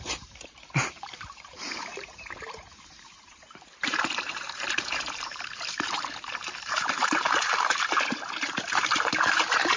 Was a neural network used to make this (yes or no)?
yes